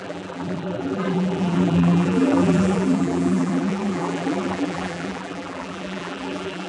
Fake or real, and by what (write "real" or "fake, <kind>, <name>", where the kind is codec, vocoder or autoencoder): fake, vocoder, BigVGAN v2